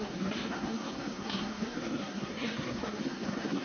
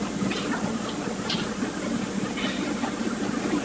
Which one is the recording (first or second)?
second